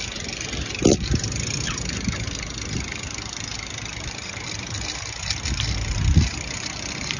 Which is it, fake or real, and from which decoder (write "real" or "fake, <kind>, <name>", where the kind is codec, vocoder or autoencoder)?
fake, vocoder, BigVGAN v2